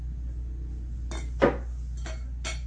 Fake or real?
real